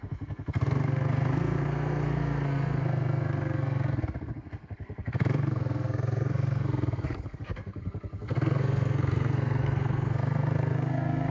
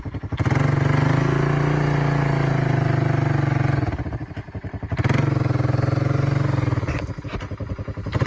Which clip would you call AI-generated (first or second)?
first